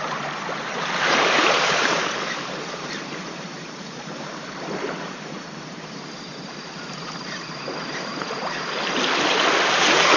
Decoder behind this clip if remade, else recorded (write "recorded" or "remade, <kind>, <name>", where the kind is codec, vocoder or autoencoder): remade, vocoder, BigVGAN v2